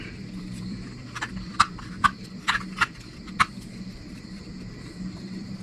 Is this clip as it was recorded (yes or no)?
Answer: no